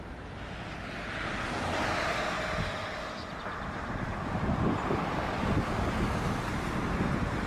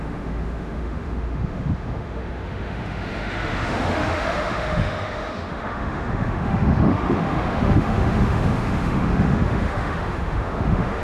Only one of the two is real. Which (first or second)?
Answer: first